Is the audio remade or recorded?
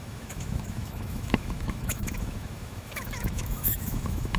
remade